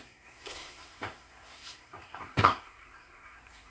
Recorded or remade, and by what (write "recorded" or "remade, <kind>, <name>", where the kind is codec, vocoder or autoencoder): remade, codec, SNAC